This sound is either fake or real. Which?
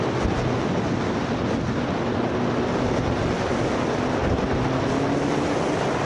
real